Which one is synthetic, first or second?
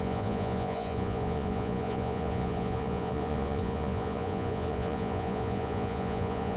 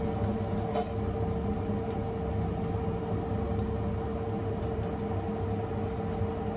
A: first